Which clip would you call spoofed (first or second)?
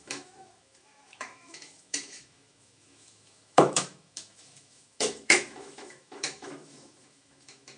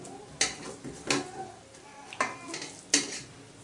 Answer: first